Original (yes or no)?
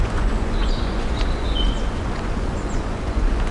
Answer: no